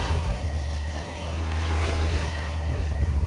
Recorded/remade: remade